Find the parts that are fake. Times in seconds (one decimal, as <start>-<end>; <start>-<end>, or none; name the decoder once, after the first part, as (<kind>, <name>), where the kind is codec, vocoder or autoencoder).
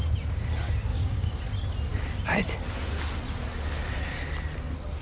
0.9-1.4 (codec, DAC)